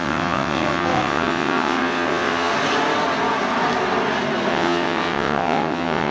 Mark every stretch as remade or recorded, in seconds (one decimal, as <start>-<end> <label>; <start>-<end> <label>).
0.0-2.5 remade; 2.5-4.5 recorded; 4.5-6.1 remade